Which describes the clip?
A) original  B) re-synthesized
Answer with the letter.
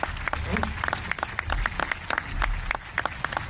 A